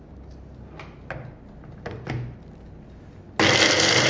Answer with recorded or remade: recorded